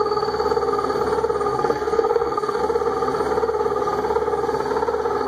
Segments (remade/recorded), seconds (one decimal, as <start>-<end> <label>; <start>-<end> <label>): 0.0-1.5 recorded; 1.5-2.6 remade; 2.6-5.3 recorded